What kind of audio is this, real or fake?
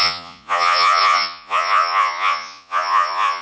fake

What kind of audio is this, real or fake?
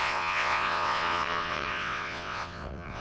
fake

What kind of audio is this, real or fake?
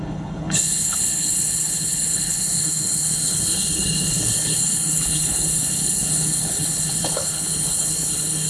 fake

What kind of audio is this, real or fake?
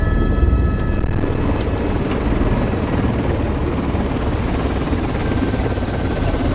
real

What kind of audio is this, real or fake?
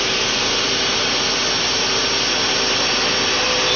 fake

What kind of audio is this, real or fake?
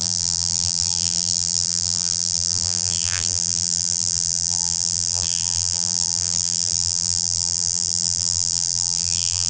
fake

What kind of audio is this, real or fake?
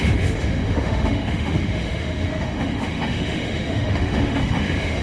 fake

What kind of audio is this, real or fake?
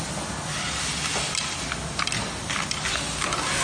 real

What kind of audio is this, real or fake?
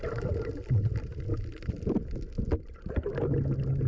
real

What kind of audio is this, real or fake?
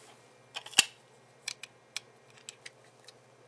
real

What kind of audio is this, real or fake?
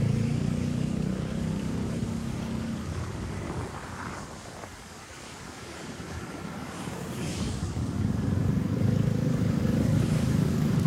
fake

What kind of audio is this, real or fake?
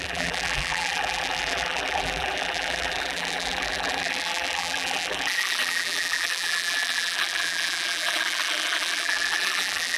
fake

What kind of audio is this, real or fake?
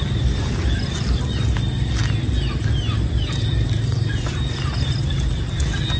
real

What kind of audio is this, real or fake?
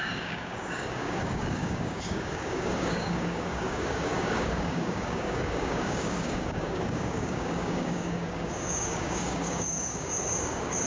fake